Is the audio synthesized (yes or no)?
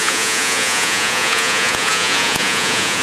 yes